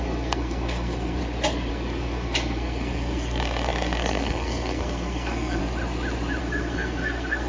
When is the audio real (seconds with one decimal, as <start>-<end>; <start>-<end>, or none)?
1.2-1.7; 5.6-6.4